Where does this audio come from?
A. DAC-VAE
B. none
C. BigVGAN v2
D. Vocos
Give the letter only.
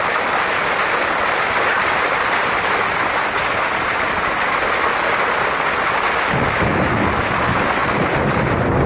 B